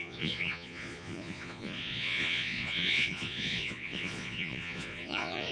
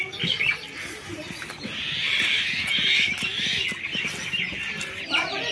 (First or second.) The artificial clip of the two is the first